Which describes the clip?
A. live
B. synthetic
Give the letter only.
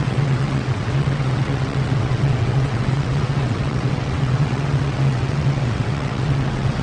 B